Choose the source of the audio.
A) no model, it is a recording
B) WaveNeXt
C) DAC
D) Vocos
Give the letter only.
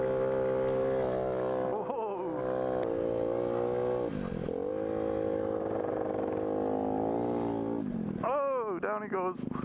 A